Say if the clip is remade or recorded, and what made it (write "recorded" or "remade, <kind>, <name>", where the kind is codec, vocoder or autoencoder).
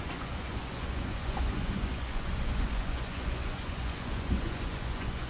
remade, vocoder, Vocos